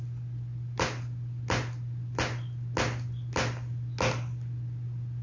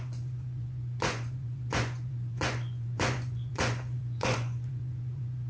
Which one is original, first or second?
first